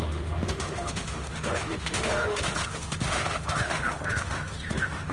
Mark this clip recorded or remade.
remade